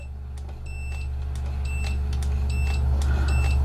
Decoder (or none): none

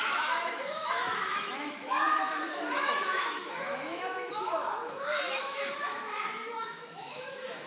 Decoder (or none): autoencoder, DAC-VAE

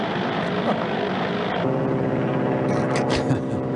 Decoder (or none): none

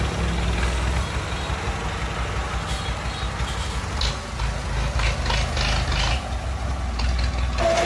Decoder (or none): none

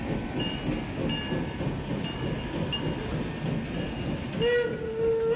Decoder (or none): none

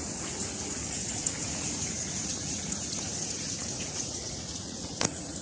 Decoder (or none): vocoder, Vocos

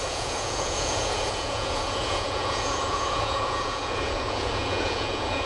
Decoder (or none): vocoder, Vocos